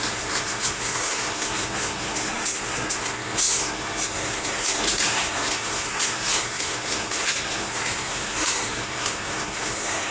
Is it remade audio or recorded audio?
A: remade